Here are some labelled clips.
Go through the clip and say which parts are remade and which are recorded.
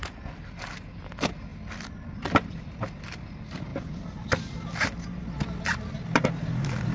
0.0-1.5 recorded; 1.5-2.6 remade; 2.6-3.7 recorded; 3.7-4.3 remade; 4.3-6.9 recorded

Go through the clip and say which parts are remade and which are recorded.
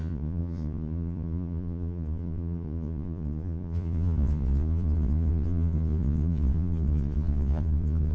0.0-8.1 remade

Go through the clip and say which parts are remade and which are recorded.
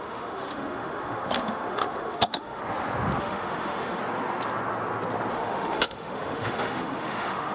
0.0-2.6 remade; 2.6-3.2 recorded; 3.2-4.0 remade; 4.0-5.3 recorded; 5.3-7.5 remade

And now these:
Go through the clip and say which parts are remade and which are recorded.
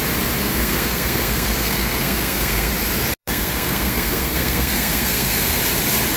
0.0-0.4 recorded; 0.4-2.7 remade; 2.7-3.2 recorded; 3.2-5.6 remade; 5.6-6.2 recorded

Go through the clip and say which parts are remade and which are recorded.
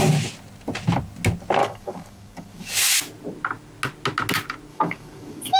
0.0-1.6 recorded; 1.6-2.8 remade; 2.8-4.7 recorded; 4.7-5.6 remade